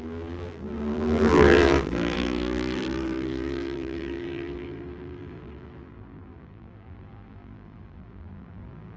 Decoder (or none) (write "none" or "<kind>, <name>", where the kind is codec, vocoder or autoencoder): vocoder, BigVGAN v2